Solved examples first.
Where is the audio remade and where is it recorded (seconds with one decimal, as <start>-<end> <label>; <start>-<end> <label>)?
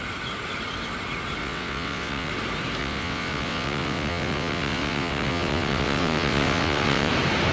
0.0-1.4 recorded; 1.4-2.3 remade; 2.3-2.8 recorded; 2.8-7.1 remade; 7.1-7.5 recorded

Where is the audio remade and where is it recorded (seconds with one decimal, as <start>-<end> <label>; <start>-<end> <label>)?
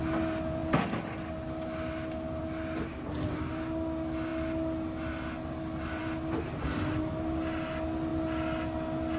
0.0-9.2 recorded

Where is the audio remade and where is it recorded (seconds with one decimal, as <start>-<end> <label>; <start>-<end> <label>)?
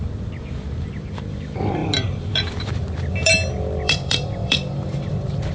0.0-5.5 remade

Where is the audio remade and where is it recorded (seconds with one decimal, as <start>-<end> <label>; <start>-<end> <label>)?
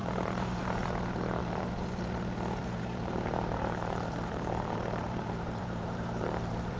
0.0-0.7 remade; 0.7-1.4 recorded; 1.4-2.0 remade; 2.0-2.6 recorded; 2.6-6.8 remade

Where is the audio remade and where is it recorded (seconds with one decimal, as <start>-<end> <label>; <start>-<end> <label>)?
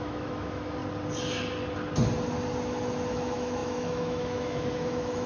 0.0-0.8 remade; 0.8-3.1 recorded; 3.1-5.3 remade